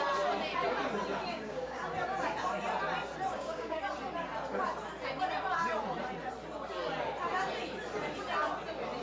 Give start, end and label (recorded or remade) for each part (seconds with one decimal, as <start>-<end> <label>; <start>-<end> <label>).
0.0-1.3 recorded; 1.3-1.8 remade; 1.8-3.3 recorded; 3.3-3.8 remade; 3.8-9.0 recorded